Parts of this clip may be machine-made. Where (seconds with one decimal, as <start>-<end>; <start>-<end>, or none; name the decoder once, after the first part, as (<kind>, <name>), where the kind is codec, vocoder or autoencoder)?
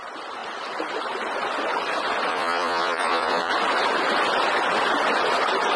2.3-3.5 (vocoder, Vocos)